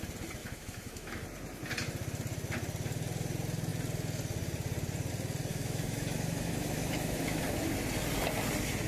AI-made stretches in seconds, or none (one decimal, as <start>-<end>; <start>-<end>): 0.4-1.2; 5.5-7.4